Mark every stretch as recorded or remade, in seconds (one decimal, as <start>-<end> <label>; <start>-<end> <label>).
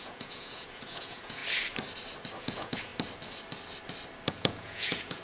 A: 0.0-1.4 remade; 1.4-2.4 recorded; 2.4-2.9 remade; 2.9-4.3 recorded; 4.3-5.2 remade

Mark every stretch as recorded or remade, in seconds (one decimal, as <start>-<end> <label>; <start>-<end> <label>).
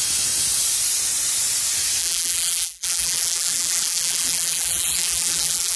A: 0.0-2.0 recorded; 2.0-5.8 remade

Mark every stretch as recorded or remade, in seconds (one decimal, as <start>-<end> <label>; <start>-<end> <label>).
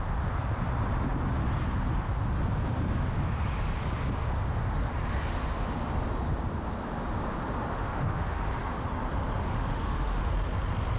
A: 0.0-7.7 recorded; 7.7-8.4 remade; 8.4-9.4 recorded; 9.4-10.3 remade; 10.3-11.0 recorded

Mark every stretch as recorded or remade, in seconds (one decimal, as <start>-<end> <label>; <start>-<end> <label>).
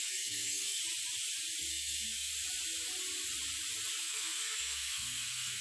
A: 0.0-0.8 remade; 0.8-1.7 recorded; 1.7-2.3 remade; 2.3-4.0 recorded; 4.0-5.6 remade